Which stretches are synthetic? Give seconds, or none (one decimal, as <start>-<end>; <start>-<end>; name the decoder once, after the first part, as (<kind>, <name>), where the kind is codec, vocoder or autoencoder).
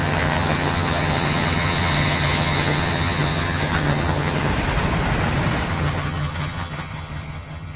0.0-4.5 (vocoder, HiFi-GAN); 5.7-7.8